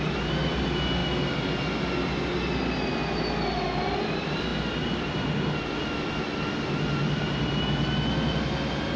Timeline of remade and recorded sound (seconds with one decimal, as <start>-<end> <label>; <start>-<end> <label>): 0.0-9.0 recorded